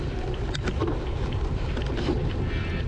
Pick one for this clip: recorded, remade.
recorded